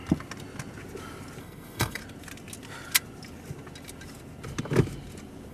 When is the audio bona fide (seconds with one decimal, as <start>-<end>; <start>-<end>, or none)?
0.0-1.4; 2.0-5.5